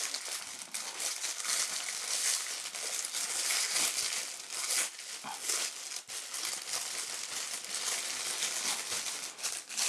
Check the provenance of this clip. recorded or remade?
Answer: recorded